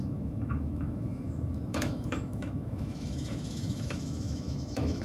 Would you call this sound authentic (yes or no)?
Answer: no